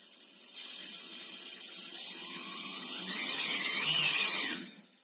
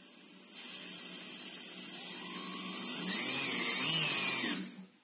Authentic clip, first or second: second